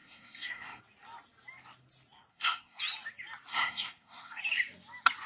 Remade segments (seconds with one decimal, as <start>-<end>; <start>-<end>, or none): 0.0-0.8; 2.3-2.8; 3.5-4.4